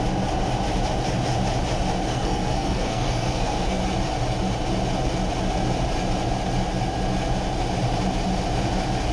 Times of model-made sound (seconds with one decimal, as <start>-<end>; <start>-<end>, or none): 2.1-3.8